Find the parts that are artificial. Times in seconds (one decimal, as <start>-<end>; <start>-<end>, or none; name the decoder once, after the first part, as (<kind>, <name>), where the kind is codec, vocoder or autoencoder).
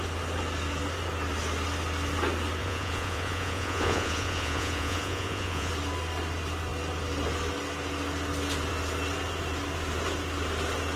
2.6-5.7 (vocoder, Vocos)